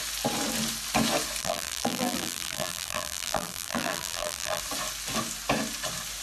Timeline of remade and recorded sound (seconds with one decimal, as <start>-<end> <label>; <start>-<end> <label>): 0.0-1.4 recorded; 1.4-4.6 remade; 4.6-6.2 recorded